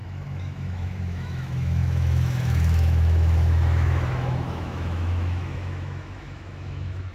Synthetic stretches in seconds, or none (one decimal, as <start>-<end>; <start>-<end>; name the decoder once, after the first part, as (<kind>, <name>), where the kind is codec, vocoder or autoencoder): 0.0-7.1 (autoencoder, DAC-VAE)